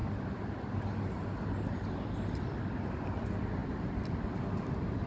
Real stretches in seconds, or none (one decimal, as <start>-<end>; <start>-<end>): 0.0-5.1